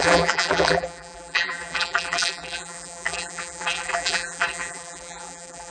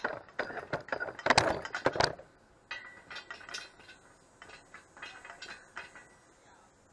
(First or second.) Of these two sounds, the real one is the second